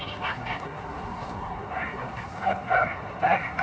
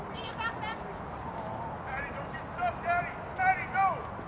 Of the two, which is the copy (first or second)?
first